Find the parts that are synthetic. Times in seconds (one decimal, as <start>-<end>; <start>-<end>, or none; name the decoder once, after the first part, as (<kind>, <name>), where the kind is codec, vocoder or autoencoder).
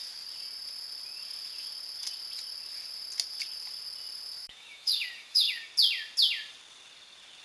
4.4-5.6 (autoencoder, DAC-VAE)